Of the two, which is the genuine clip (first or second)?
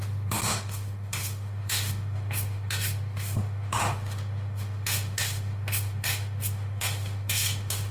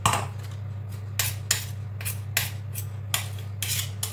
second